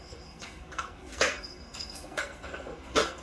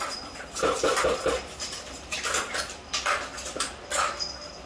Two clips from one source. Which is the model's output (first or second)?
first